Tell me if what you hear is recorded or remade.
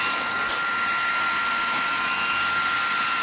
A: recorded